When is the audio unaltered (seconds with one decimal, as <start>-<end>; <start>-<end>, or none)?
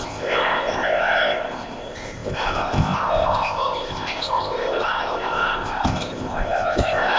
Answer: none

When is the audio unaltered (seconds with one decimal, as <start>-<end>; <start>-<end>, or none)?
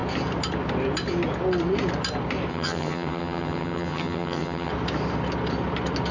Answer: 0.0-2.5; 4.7-6.1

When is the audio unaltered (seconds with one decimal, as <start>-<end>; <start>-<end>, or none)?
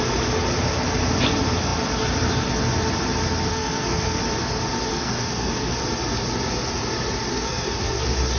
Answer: 0.0-3.5; 4.2-4.9; 5.8-7.3; 8.0-8.4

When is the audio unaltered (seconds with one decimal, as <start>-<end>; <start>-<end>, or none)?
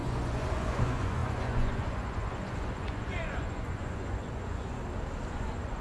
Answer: 4.8-5.3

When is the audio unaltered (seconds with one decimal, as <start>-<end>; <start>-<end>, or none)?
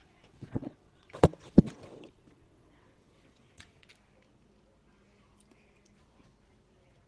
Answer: 3.9-7.1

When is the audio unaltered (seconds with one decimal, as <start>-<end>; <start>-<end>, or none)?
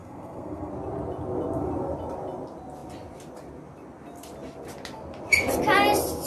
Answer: 0.7-6.3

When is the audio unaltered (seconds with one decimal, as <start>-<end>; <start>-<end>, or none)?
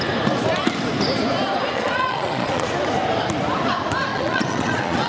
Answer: 0.0-1.7; 2.7-4.1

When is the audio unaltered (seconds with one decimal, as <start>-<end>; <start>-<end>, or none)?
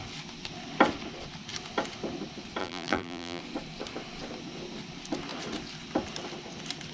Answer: 0.0-2.6; 3.4-6.9